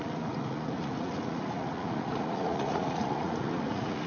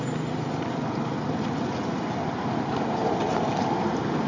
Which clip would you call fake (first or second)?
first